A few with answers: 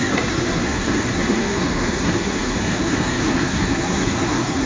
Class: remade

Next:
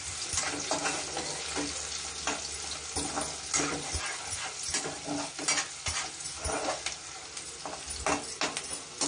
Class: recorded